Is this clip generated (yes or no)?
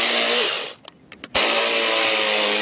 no